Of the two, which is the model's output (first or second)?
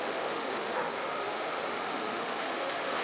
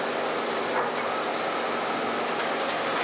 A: first